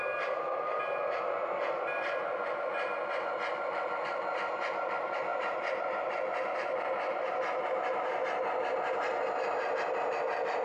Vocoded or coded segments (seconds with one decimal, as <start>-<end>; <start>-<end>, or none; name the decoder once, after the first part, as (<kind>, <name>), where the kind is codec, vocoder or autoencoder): 5.3-7.3 (vocoder, BigVGAN v2)